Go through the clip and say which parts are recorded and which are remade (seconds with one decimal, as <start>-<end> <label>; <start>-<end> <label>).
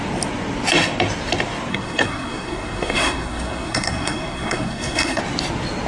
0.0-1.7 recorded; 1.7-5.2 remade; 5.2-5.9 recorded